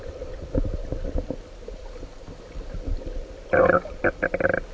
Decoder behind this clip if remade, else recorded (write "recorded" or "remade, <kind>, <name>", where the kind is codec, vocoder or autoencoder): recorded